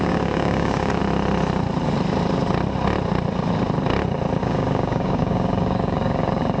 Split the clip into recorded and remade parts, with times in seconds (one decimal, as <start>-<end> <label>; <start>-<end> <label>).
0.0-1.0 remade; 1.0-4.4 recorded; 4.4-6.6 remade